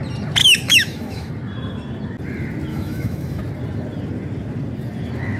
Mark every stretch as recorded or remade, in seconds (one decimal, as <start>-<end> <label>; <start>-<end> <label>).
0.0-0.4 recorded; 0.4-1.3 remade; 1.3-2.7 recorded; 2.7-3.4 remade; 3.4-5.4 recorded